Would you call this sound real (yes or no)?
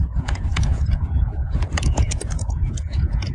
no